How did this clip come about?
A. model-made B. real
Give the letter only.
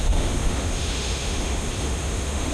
A